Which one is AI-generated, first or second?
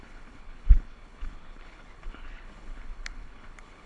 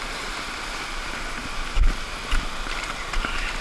first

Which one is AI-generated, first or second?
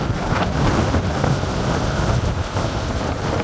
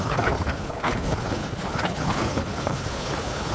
second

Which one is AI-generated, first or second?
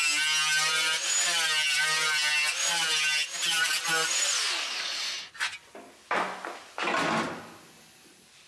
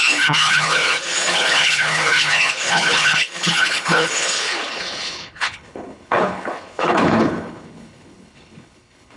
second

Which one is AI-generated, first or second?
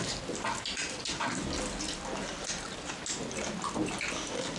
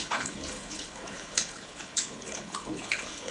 second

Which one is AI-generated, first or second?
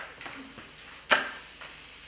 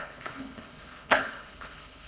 second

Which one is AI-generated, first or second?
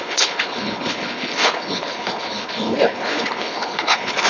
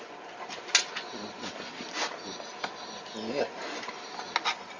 first